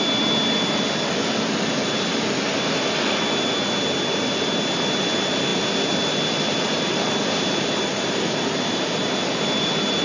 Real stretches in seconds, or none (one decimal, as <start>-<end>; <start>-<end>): 0.0-10.0